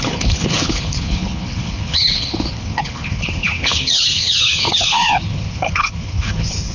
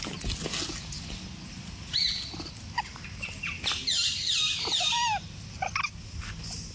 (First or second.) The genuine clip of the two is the second